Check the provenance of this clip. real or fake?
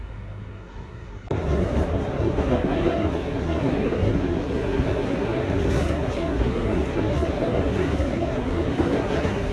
fake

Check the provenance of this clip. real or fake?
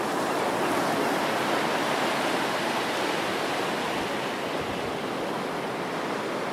real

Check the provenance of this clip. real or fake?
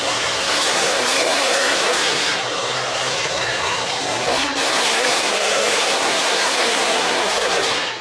fake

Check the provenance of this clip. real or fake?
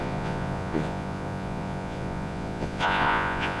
fake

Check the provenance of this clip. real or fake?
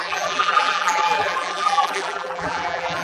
fake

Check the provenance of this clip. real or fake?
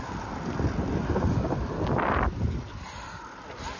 real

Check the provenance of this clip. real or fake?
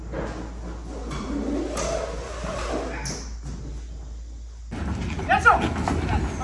real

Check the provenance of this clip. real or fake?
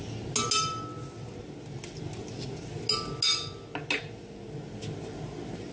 real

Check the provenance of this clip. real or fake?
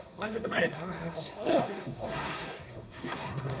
fake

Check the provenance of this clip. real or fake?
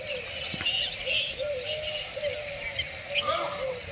real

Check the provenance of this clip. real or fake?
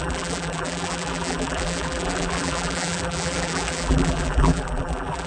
fake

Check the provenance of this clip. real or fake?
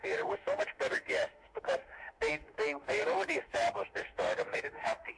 fake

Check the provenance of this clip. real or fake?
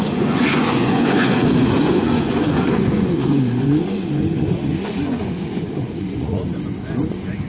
fake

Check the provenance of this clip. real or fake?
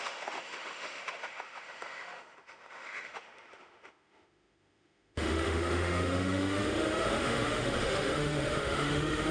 fake